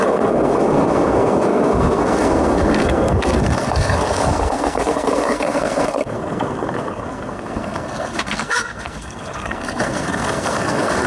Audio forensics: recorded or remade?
remade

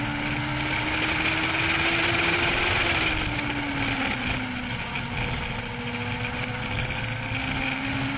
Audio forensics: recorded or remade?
recorded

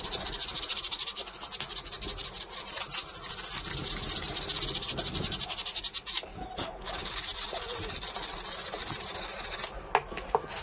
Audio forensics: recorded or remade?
recorded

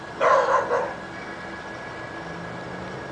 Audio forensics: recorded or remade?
recorded